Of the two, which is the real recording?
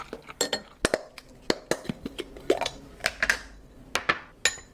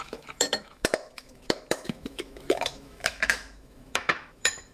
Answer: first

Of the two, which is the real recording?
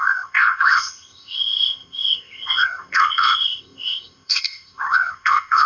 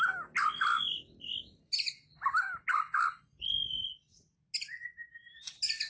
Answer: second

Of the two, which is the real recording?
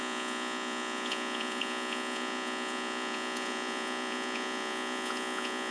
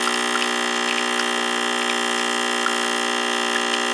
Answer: second